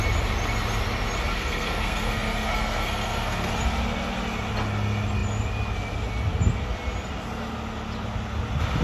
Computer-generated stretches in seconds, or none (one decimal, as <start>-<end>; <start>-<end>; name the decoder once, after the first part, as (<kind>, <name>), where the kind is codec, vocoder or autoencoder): 1.3-3.5 (codec, SNAC)